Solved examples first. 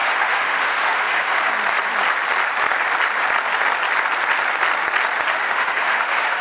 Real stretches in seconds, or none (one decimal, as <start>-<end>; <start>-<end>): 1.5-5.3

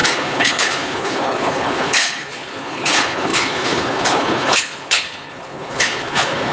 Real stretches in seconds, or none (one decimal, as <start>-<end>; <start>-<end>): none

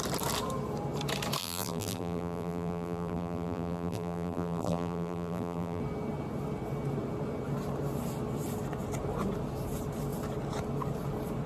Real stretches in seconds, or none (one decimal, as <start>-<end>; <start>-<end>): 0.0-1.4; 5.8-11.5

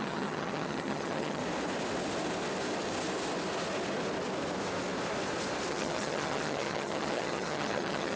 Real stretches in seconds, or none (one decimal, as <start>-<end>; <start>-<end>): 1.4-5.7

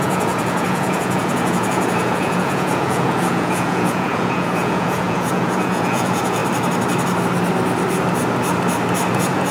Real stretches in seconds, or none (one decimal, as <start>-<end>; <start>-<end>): 6.4-9.1

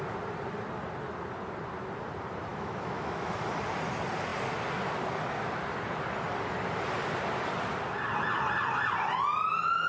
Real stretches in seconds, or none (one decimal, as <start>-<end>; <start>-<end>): 0.0-2.5; 3.4-9.9

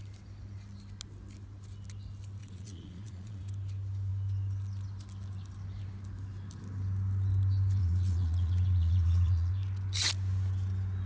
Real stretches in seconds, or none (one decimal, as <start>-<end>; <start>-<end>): 0.0-2.4; 3.4-7.8; 9.5-11.1